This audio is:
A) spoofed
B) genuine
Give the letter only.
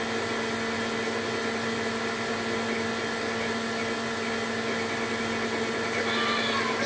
B